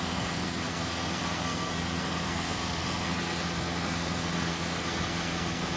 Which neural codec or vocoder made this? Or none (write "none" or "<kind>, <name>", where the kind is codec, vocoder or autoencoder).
codec, SNAC